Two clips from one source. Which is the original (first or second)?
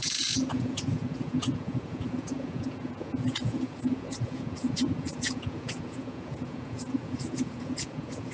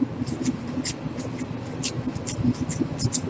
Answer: second